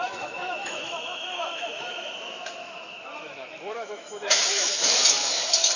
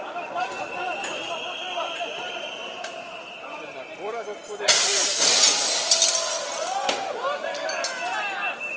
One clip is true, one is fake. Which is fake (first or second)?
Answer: first